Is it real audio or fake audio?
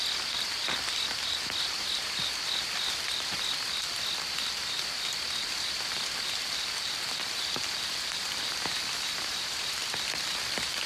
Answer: fake